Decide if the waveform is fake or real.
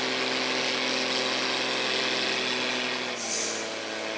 real